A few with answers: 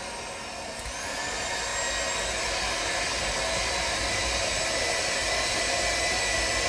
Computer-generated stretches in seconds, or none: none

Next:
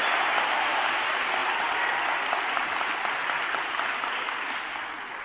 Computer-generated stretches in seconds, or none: none